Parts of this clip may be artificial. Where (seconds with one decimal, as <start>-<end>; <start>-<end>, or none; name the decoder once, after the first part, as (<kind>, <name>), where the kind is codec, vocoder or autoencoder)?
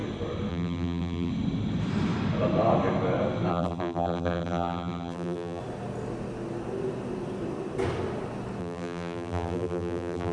0.5-1.3 (vocoder, BigVGAN v2); 3.5-5.6; 8.6-10.3